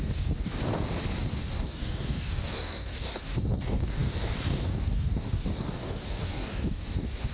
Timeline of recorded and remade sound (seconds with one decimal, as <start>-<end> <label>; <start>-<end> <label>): 0.0-0.6 remade; 0.6-1.4 recorded; 1.4-7.3 remade